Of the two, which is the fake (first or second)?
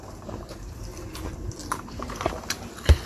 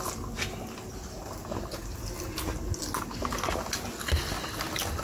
first